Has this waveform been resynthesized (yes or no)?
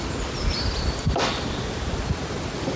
no